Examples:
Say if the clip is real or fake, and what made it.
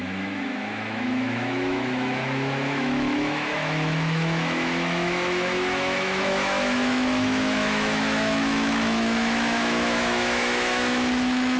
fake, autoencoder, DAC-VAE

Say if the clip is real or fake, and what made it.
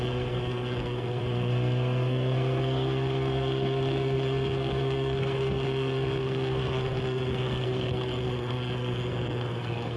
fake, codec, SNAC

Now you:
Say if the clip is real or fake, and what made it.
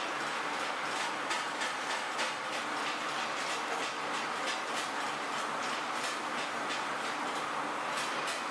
real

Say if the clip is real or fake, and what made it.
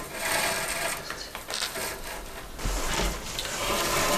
real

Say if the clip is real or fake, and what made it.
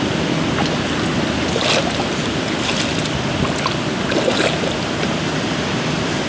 real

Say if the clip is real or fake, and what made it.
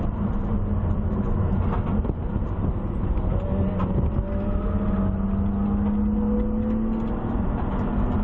real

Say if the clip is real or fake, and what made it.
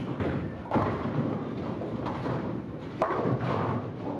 fake, vocoder, BigVGAN v2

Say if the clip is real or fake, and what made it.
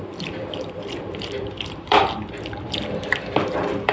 fake, vocoder, BigVGAN v2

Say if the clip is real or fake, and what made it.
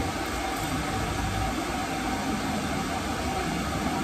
real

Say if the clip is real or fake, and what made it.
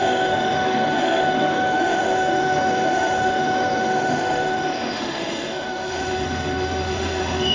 fake, autoencoder, DAC-VAE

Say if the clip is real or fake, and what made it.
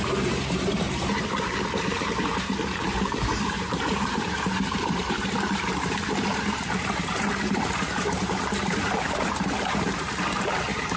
fake, vocoder, BigVGAN v2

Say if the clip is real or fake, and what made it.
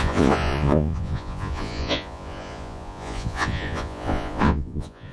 fake, vocoder, Vocos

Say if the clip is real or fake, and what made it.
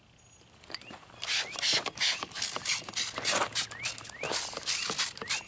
real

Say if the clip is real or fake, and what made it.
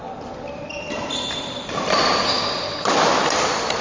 real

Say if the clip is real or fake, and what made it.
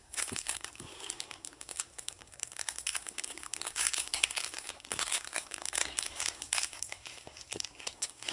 fake, codec, SNAC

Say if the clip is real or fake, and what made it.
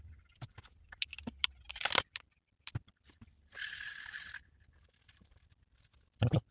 fake, vocoder, BigVGAN v2